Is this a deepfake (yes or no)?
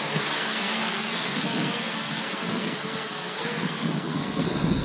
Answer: yes